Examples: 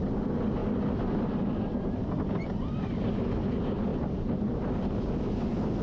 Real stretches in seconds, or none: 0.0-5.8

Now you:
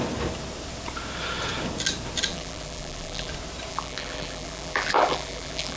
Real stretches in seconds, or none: 0.0-2.3; 3.3-3.7

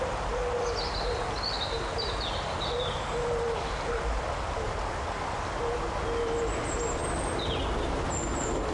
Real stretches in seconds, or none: 0.0-8.7

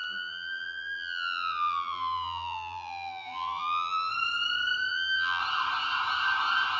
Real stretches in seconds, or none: 4.1-4.9; 5.4-6.8